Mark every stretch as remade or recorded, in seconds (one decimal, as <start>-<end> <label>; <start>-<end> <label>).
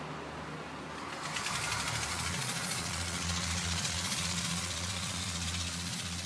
0.0-2.1 recorded; 2.1-6.3 remade